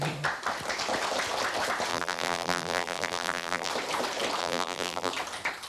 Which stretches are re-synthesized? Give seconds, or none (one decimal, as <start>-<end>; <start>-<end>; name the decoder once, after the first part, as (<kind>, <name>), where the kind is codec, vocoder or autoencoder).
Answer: 1.9-3.7 (vocoder, BigVGAN v2); 4.4-5.1